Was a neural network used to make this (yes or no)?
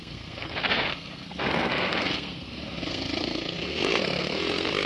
yes